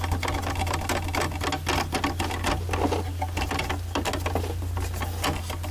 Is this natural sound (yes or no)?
yes